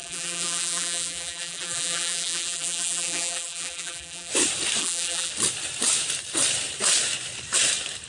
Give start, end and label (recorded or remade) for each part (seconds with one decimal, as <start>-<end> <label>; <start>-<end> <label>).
0.0-4.3 remade; 4.3-4.8 recorded; 4.8-5.3 remade; 5.3-8.1 recorded